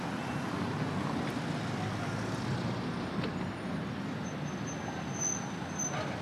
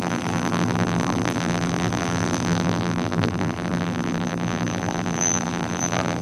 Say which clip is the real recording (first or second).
first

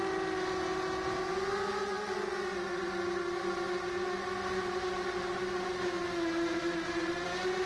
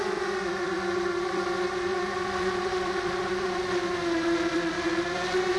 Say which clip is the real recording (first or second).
first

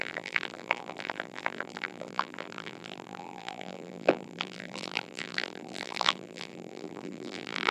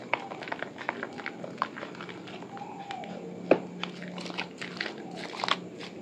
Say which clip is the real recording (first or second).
second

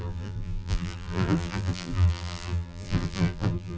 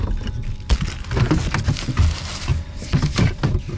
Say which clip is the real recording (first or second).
second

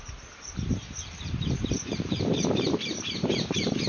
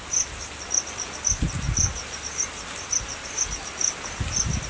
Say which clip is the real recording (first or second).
second